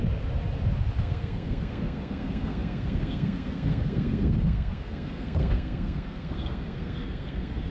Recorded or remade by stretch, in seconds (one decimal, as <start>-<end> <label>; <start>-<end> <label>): 0.0-1.0 recorded; 1.0-7.7 remade